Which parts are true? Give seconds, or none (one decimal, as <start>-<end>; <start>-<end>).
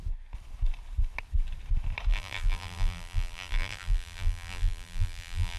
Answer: 0.0-2.1